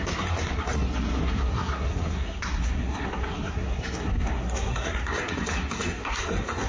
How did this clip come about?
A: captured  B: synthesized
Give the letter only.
B